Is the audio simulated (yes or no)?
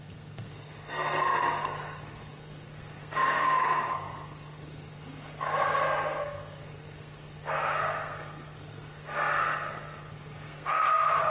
yes